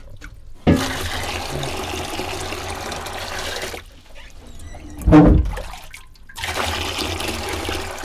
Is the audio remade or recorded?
recorded